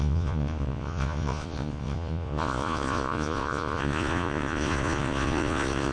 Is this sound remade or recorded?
remade